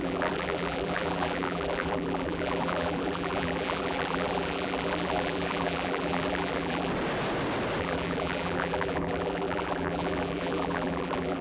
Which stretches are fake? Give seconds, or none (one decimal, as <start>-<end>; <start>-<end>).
0.0-6.9; 7.8-11.4